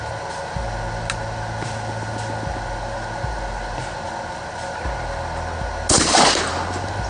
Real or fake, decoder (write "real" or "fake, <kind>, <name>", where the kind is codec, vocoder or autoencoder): real